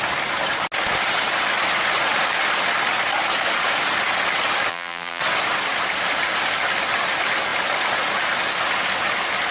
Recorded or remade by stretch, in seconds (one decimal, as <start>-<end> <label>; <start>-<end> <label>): 0.0-4.7 recorded; 4.7-5.2 remade; 5.2-9.5 recorded